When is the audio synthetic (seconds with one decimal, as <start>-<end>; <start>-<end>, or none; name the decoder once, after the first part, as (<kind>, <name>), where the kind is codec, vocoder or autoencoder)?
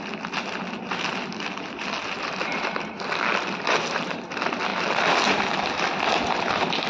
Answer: none